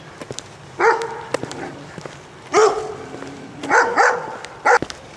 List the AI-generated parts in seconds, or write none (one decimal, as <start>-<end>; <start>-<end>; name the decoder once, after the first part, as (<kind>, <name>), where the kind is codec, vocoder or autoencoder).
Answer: none